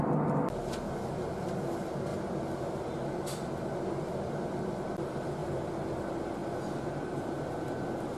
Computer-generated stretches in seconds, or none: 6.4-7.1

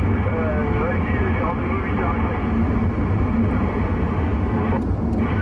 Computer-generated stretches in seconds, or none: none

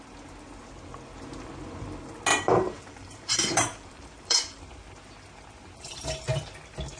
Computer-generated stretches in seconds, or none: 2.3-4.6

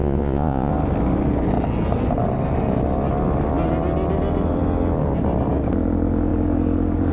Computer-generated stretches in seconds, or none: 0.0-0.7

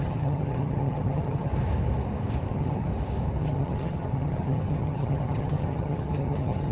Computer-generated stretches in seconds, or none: 0.0-1.5; 2.5-2.9; 3.4-6.7